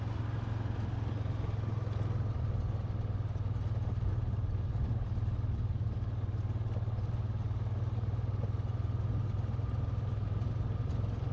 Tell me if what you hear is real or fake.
real